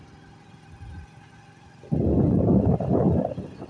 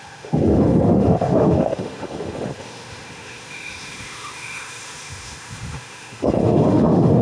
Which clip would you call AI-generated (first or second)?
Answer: second